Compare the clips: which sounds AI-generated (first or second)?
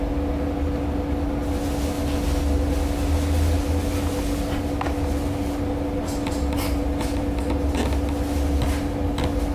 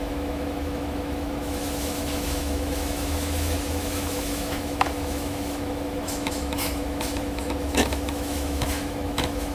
second